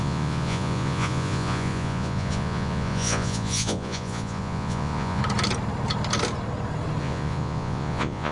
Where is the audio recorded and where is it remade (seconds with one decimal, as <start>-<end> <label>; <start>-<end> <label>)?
0.0-5.2 remade; 5.2-7.0 recorded; 7.0-8.3 remade